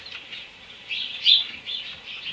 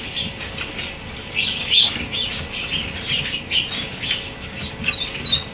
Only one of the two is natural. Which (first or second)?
second